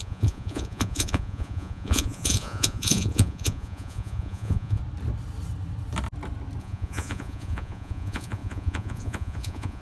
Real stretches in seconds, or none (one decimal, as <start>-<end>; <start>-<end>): 4.8-6.6